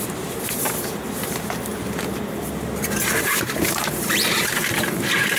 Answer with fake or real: fake